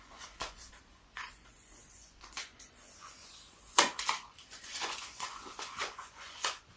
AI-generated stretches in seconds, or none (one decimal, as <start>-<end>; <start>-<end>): 0.0-6.8

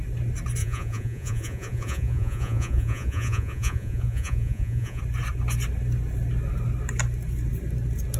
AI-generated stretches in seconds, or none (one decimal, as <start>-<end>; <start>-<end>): 0.6-5.0

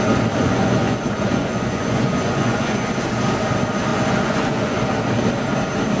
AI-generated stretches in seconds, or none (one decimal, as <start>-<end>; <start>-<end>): 0.4-2.9; 3.9-4.8

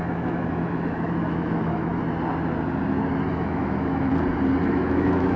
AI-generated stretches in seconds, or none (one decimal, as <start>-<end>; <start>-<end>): 0.0-1.9; 3.3-4.1; 4.7-5.4

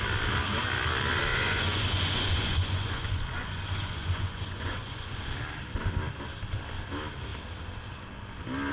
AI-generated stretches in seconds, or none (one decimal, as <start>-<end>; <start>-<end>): 1.3-5.2

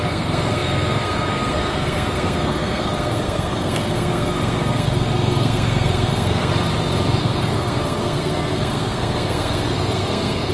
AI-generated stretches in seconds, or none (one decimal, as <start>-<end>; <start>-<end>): 0.0-6.5; 7.2-10.5

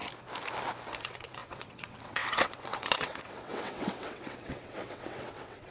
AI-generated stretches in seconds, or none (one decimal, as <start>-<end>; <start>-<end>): 1.0-5.7

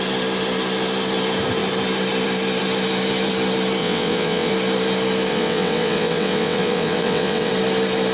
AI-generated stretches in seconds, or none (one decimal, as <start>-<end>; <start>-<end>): 3.8-4.5; 5.3-7.5